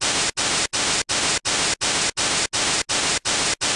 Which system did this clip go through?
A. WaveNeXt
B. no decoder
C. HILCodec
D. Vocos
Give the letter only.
B